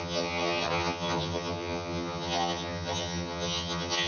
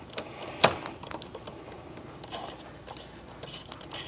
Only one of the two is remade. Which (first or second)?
first